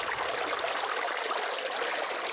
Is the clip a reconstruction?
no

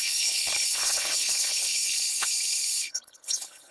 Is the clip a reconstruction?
yes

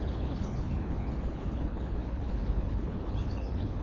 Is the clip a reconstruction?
yes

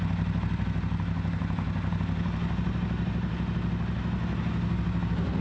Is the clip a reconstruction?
no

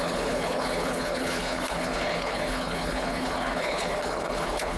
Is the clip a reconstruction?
yes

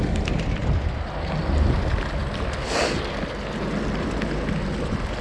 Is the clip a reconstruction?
no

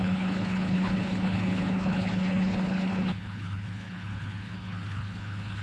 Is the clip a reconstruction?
yes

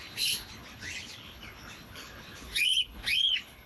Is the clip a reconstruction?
yes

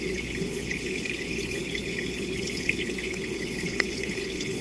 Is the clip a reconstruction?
yes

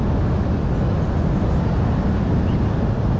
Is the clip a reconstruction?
no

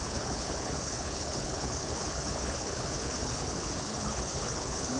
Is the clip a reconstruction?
yes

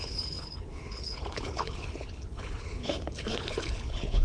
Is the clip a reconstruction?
yes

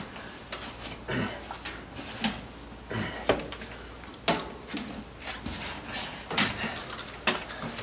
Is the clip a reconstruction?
no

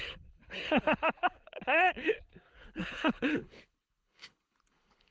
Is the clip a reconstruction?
yes